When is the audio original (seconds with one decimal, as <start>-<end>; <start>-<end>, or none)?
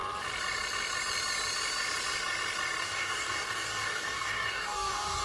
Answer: 0.0-2.8